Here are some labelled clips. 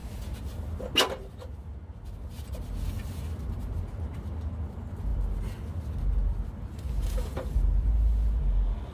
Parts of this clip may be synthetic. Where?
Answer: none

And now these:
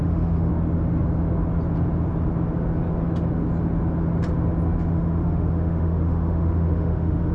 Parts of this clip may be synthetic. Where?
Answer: 0.0-0.5 (autoencoder, DAC-VAE); 4.9-7.3

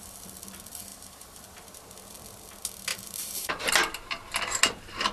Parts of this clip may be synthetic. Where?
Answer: 0.9-1.4 (vocoder, BigVGAN v2); 2.9-3.7

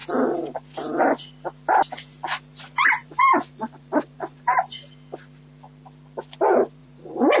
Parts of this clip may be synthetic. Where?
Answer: 3.0-4.8 (vocoder, BigVGAN v2); 6.8-7.4

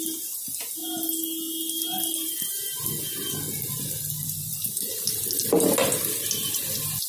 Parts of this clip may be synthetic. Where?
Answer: none

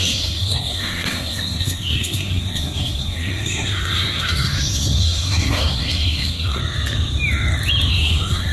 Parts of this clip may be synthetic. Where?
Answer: 0.0-6.6 (codec, SNAC); 7.9-8.5